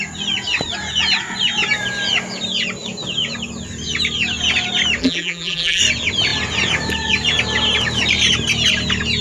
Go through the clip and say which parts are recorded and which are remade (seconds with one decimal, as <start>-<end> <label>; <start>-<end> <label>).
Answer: 0.0-5.0 recorded; 5.0-5.8 remade; 5.8-9.2 recorded